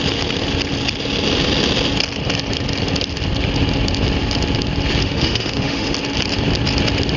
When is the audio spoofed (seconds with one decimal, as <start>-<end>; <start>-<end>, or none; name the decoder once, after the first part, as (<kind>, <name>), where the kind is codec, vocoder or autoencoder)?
5.0-5.9 (autoencoder, DAC-VAE)

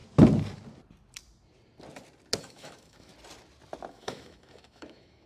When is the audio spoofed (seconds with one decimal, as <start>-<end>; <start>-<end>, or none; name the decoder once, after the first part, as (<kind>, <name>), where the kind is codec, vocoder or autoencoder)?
2.4-3.1 (autoencoder, DAC-VAE); 3.9-5.3

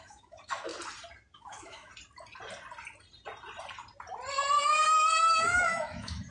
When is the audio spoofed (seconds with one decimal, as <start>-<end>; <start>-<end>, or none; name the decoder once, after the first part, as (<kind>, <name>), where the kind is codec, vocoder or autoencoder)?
0.0-0.7 (autoencoder, DAC-VAE); 1.4-1.9; 4.6-6.3

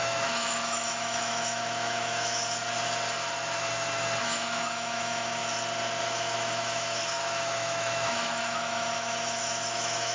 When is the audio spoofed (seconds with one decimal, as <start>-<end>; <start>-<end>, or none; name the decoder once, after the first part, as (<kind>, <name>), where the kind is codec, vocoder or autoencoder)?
0.0-2.6 (autoencoder, DAC-VAE); 4.2-5.4; 6.0-10.1

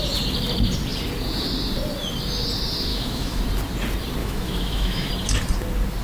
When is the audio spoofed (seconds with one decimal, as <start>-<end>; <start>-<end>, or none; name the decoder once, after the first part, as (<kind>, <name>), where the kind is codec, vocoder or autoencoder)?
2.9-3.4 (autoencoder, DAC-VAE); 4.2-5.1